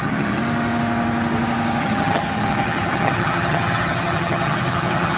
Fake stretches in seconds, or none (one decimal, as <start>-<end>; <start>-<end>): 0.0-0.4; 1.8-5.2